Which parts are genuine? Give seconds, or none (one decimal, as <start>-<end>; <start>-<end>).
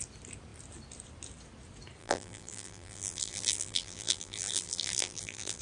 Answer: 0.0-2.0